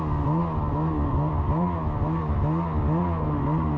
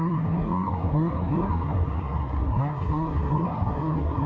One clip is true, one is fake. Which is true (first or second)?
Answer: first